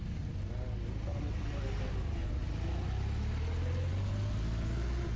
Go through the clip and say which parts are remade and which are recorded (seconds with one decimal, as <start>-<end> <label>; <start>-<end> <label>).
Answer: 0.0-1.1 recorded; 1.1-2.0 remade; 2.0-5.2 recorded